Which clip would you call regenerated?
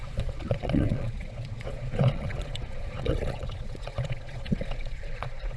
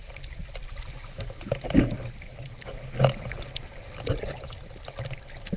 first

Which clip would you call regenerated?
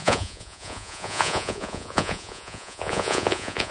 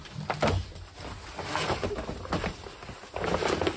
first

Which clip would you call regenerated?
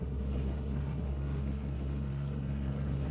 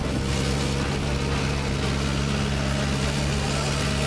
first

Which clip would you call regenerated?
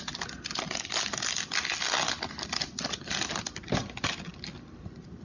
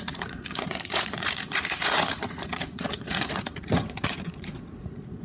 second